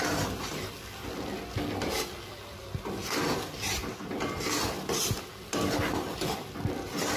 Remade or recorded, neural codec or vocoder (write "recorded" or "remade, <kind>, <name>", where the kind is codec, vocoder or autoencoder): recorded